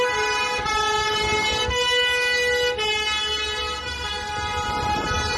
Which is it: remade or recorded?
recorded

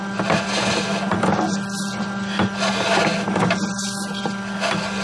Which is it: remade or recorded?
recorded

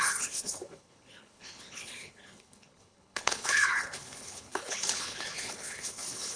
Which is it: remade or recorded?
remade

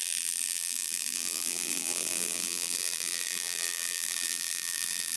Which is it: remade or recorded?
remade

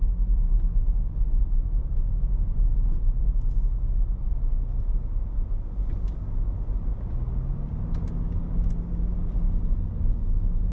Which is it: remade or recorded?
recorded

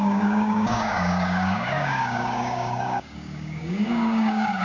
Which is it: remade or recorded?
remade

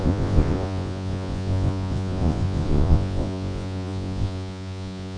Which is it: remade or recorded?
remade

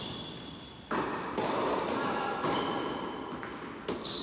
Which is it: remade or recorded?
recorded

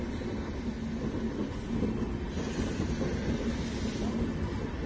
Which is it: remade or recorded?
recorded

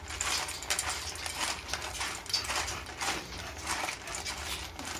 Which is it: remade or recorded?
recorded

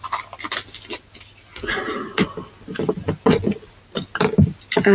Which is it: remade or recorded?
recorded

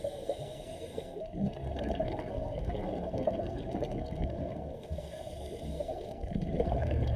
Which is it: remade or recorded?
remade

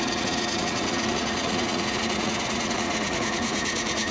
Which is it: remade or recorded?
remade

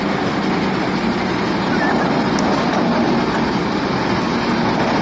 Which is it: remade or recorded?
recorded